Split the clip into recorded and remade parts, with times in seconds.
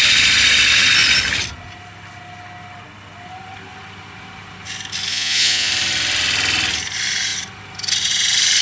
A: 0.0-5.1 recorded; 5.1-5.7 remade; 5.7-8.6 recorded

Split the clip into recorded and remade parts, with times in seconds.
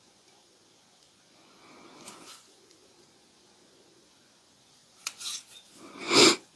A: 0.0-6.6 remade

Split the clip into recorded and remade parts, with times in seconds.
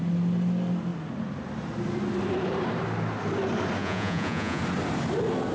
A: 0.0-3.8 recorded; 3.8-4.6 remade; 4.6-5.5 recorded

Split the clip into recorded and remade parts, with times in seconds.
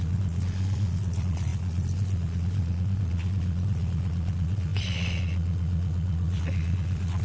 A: 0.0-7.2 remade